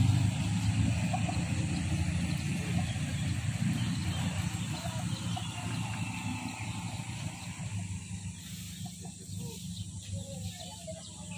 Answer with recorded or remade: recorded